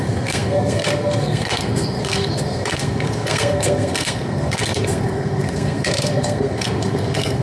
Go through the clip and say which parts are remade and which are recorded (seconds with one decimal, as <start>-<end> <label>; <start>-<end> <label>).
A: 0.0-7.4 remade